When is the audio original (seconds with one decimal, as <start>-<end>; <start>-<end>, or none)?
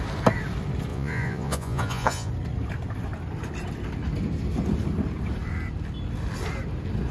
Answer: 0.0-0.9; 2.3-7.1